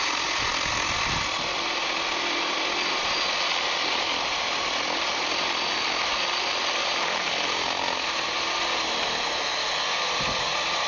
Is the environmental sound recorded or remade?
recorded